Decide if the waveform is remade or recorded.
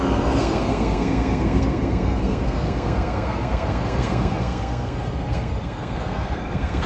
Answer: remade